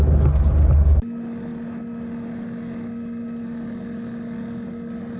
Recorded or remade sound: recorded